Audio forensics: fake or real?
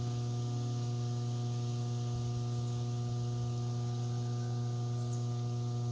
real